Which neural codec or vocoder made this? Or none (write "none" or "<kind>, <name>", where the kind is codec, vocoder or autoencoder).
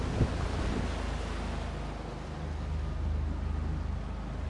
none